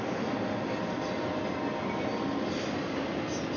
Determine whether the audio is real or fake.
real